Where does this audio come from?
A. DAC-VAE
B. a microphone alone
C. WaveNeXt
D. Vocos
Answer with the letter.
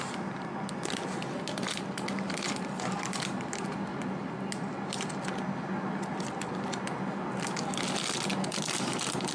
B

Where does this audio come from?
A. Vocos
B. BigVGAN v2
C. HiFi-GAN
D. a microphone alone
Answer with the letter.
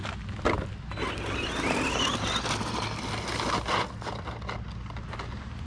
D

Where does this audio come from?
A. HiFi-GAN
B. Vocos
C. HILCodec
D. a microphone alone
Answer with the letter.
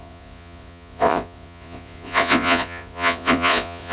B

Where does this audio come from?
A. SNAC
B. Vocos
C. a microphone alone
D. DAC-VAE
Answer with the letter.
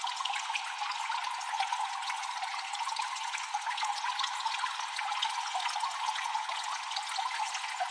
B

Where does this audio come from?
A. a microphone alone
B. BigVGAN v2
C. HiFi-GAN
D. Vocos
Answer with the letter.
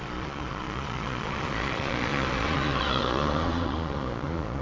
D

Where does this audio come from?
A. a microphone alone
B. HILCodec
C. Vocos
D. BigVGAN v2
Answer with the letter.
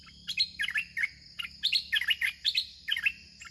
A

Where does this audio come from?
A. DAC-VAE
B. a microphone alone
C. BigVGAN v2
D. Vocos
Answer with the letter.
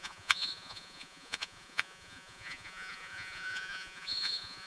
D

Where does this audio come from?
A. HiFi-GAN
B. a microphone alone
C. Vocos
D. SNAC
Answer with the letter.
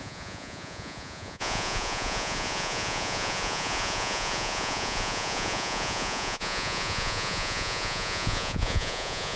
C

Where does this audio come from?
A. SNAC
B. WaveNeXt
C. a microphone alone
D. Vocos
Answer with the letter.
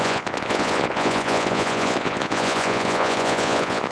D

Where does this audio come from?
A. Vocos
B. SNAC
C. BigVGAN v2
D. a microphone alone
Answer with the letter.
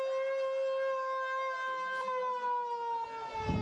D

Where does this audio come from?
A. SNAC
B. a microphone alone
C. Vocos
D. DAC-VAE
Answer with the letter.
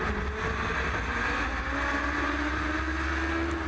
B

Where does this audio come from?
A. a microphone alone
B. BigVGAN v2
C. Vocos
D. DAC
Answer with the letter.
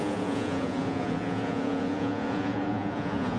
C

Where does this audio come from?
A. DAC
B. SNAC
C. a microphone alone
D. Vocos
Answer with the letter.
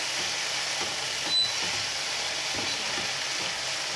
C